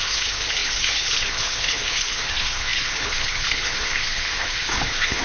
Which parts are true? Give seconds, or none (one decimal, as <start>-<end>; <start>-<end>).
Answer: none